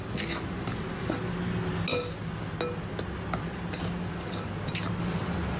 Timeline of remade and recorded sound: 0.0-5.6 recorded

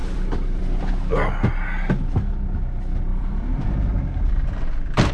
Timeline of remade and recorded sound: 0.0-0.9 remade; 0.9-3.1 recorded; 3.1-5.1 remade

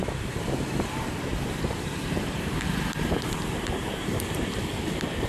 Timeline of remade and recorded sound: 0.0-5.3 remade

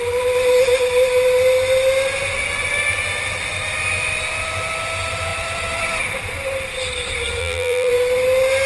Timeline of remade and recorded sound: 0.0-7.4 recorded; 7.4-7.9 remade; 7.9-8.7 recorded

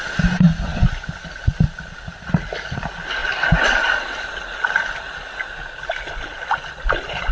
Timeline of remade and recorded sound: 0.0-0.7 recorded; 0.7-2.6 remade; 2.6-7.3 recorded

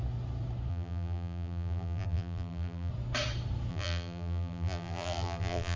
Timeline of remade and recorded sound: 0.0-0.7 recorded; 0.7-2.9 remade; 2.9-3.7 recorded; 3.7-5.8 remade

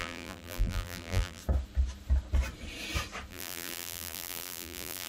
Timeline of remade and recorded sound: 0.0-1.4 remade; 1.4-3.3 recorded; 3.3-5.1 remade